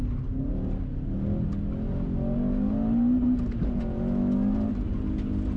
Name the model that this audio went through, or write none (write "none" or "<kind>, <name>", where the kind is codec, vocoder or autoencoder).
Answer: none